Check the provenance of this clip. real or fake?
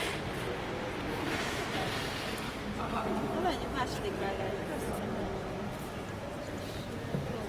real